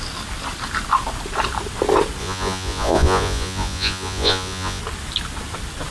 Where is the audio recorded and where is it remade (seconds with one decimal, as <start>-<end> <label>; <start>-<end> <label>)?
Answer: 0.0-2.2 recorded; 2.2-4.8 remade; 4.8-5.9 recorded